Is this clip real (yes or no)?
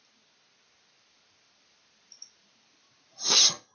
yes